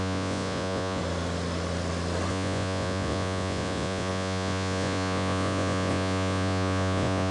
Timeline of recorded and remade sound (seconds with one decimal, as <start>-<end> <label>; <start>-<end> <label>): 0.0-1.0 remade; 1.0-2.3 recorded; 2.3-7.3 remade